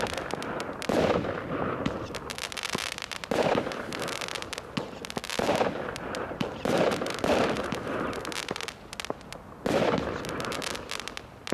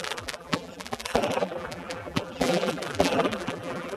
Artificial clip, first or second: second